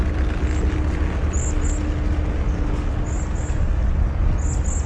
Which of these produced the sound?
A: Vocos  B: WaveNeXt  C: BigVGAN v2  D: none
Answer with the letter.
D